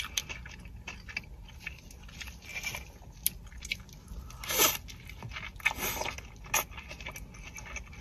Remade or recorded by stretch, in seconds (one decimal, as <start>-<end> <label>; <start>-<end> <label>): 0.0-8.0 recorded